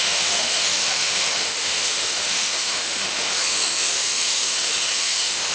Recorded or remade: remade